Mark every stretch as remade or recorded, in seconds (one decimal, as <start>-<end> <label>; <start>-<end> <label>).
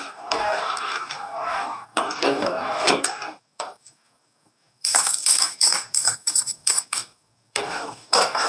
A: 0.0-8.5 remade